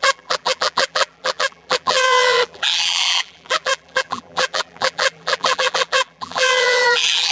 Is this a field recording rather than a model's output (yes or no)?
no